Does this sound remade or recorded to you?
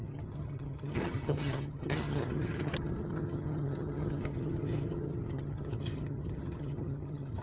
remade